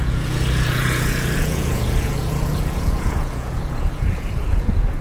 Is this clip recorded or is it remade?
remade